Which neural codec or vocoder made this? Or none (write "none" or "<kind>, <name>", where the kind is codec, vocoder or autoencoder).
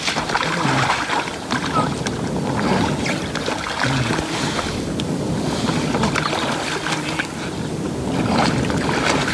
none